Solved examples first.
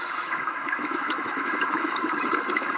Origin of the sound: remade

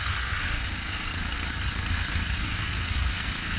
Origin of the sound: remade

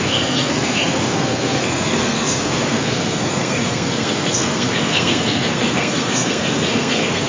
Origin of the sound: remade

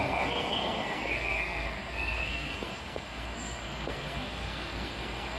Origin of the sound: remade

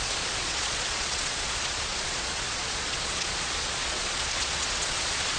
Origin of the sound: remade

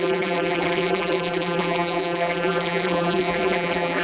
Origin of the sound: remade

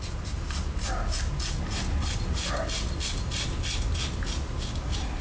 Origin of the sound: recorded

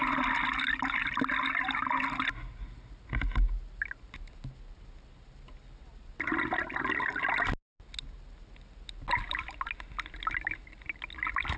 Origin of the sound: recorded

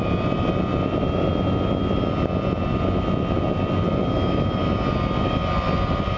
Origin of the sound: recorded